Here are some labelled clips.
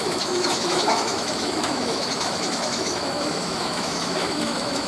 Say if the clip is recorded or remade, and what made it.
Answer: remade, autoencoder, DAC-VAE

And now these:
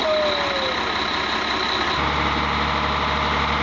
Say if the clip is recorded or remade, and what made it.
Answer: recorded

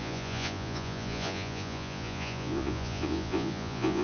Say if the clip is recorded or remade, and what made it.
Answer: remade, vocoder, Vocos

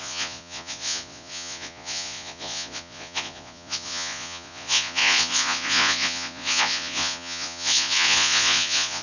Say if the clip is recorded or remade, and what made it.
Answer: remade, vocoder, Vocos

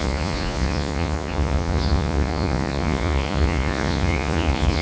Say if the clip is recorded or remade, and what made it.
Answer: remade, vocoder, Vocos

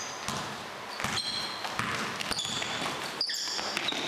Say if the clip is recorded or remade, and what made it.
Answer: recorded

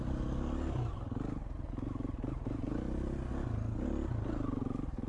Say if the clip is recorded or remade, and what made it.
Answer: recorded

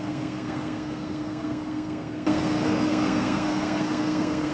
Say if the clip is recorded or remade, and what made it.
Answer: remade, codec, SNAC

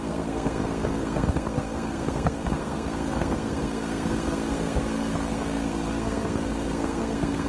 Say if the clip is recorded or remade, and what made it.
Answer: remade, codec, SNAC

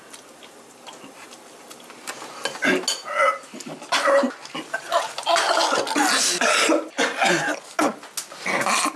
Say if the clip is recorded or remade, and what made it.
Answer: recorded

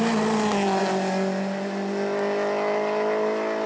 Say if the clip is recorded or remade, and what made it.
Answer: recorded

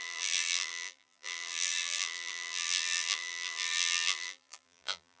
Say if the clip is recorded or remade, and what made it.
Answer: remade, vocoder, BigVGAN v2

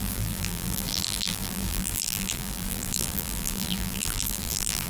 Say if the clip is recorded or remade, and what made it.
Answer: remade, vocoder, BigVGAN v2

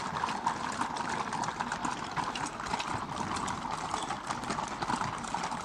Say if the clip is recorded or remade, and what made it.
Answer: recorded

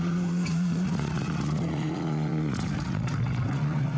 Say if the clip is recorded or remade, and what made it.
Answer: remade, vocoder, Vocos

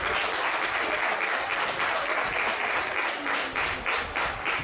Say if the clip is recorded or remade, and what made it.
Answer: recorded